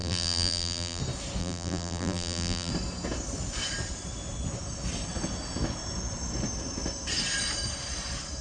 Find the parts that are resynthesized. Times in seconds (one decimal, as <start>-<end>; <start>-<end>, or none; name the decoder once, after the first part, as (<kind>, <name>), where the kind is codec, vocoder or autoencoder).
0.0-1.0 (vocoder, BigVGAN v2); 1.4-2.7